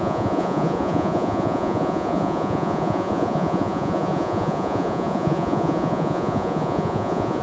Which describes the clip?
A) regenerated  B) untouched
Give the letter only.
A